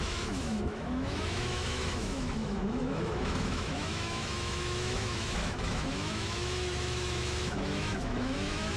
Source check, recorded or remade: remade